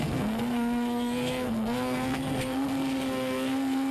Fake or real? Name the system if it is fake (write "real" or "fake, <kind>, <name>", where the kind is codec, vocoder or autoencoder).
fake, codec, SNAC